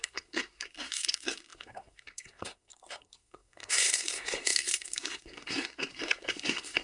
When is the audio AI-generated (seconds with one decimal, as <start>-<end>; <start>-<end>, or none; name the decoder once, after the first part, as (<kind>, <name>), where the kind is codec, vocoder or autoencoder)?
0.0-6.8 (codec, SNAC)